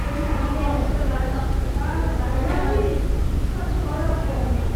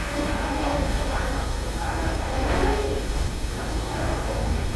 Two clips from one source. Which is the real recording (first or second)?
first